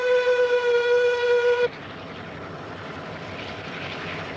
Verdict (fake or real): real